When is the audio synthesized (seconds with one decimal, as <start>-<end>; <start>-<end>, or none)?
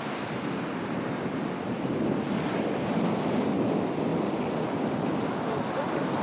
none